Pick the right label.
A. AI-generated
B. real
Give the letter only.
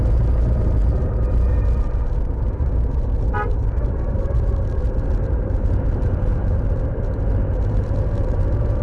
A